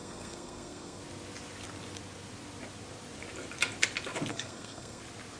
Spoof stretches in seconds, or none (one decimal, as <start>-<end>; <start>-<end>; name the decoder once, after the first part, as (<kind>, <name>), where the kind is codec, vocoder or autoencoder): 0.0-1.0 (codec, SNAC); 4.3-5.0